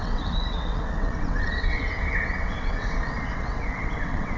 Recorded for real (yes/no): no